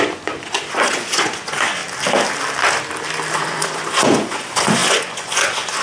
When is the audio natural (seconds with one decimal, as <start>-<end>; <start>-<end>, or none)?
1.8-3.4